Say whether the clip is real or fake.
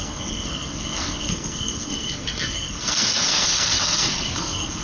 fake